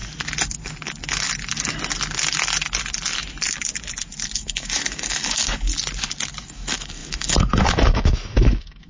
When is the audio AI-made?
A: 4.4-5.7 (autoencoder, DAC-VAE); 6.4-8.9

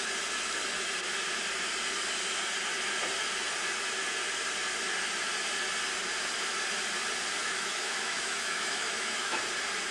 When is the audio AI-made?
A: 7.4-9.4 (autoencoder, DAC-VAE)